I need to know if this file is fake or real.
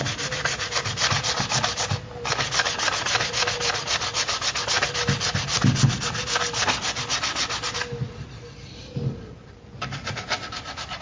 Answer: real